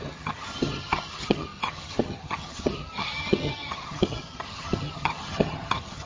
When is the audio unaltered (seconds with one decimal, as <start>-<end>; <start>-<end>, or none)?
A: none